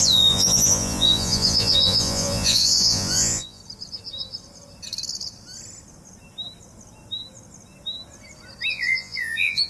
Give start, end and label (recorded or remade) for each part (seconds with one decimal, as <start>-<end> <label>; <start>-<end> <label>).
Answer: 0.0-3.6 remade; 3.6-8.7 recorded; 8.7-9.7 remade